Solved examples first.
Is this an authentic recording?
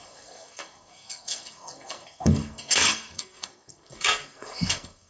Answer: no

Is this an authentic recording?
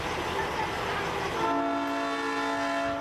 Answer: yes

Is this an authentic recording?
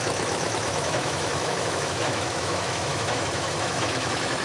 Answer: no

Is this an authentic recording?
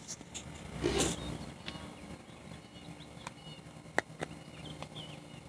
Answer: yes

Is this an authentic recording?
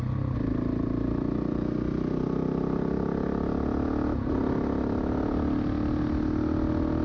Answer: yes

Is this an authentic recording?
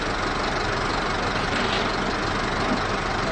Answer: yes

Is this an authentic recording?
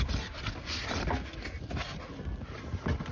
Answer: yes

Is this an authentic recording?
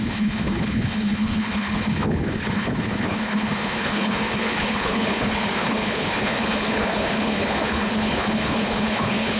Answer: no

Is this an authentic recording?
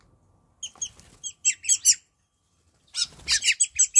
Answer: yes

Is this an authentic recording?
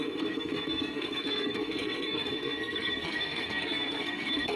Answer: no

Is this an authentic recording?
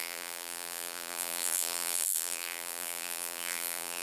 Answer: no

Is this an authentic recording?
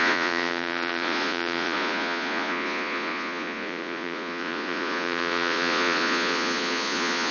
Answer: no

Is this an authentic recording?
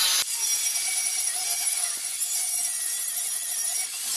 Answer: yes